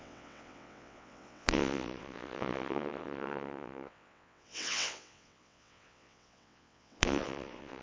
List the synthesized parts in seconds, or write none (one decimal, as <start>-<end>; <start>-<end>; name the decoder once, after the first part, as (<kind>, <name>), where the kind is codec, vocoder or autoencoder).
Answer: 0.0-7.8 (vocoder, WaveNeXt)